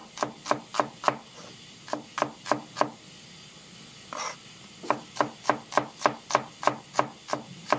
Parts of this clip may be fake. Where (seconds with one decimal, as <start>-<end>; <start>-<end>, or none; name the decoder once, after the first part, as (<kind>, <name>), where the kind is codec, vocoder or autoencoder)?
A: none